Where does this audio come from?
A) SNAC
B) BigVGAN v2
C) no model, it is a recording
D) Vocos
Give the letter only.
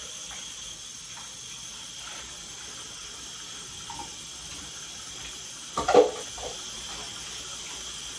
C